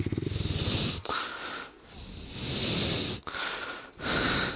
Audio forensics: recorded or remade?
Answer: recorded